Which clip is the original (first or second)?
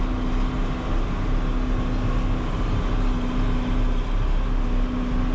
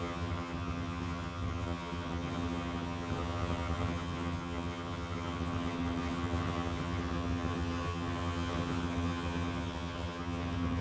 first